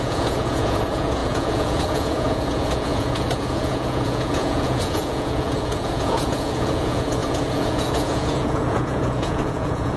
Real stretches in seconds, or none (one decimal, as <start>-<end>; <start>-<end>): none